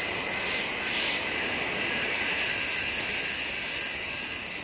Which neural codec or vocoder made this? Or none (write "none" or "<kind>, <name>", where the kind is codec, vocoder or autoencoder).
none